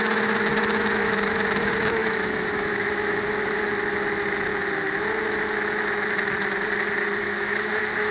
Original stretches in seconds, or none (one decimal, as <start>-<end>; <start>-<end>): 3.7-7.2